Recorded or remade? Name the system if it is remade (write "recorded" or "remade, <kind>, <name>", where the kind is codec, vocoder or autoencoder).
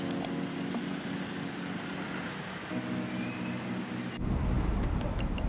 recorded